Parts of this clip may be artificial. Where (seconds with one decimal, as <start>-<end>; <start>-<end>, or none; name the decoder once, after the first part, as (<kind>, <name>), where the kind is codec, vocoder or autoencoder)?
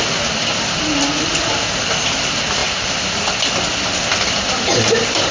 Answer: none